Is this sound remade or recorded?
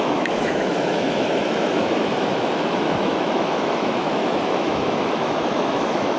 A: remade